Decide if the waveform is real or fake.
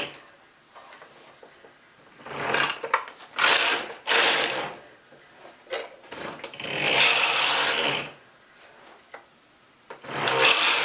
real